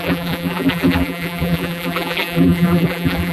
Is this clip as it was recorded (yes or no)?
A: no